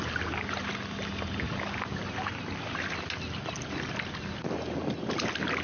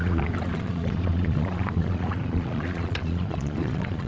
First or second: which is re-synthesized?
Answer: second